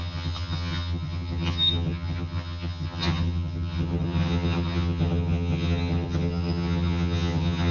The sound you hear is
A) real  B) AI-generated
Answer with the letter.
B